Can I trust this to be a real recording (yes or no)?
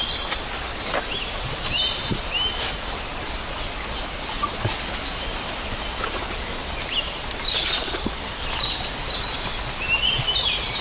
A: yes